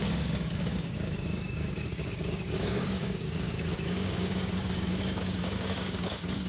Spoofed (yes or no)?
yes